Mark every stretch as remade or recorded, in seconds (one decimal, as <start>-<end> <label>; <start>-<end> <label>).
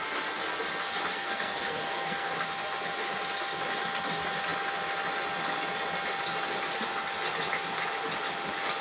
0.0-1.1 recorded; 1.1-2.3 remade; 2.3-8.8 recorded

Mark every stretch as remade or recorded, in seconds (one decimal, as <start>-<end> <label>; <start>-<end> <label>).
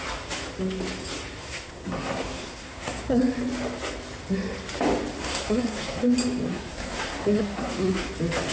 0.0-1.4 recorded; 1.4-3.2 remade; 3.2-5.2 recorded; 5.2-6.0 remade; 6.0-6.5 recorded; 6.5-8.1 remade; 8.1-8.5 recorded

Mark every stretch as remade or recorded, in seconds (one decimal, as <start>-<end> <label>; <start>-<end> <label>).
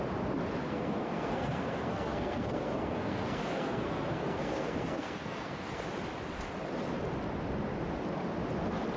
0.0-0.6 recorded; 0.6-5.8 remade; 5.8-9.0 recorded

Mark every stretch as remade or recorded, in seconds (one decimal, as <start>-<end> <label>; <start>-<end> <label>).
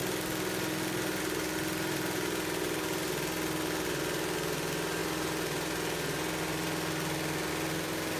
0.0-8.2 recorded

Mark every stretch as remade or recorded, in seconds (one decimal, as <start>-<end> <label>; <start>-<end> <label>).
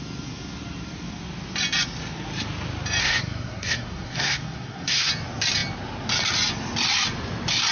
0.0-3.0 recorded; 3.0-5.1 remade; 5.1-7.7 recorded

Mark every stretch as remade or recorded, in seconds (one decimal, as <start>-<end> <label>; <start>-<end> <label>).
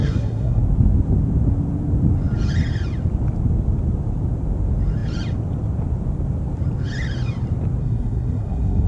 0.0-0.6 remade; 0.6-7.8 recorded; 7.8-8.9 remade